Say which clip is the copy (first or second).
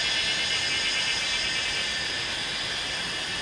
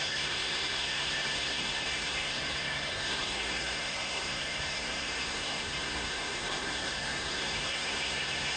second